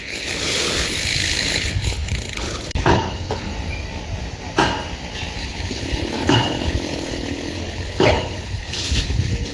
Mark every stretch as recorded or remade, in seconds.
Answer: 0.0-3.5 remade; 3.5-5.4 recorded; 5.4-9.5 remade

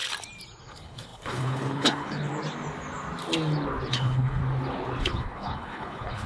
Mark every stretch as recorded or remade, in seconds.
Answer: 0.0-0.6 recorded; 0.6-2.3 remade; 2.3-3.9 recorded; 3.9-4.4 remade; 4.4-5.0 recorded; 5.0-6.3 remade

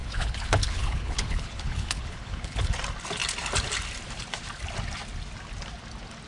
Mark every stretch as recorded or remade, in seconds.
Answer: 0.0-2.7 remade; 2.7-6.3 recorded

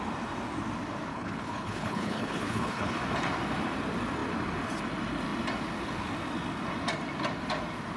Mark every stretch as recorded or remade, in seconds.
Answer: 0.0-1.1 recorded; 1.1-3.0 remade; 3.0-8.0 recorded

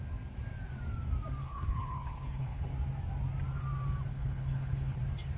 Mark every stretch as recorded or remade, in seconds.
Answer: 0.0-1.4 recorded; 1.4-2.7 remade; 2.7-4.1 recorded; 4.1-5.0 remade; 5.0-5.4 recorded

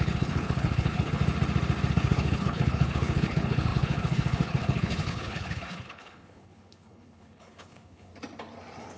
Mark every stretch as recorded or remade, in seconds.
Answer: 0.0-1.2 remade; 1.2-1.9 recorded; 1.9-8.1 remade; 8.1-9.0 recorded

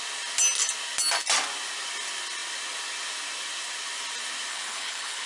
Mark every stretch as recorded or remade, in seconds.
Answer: 0.0-4.5 recorded; 4.5-5.3 remade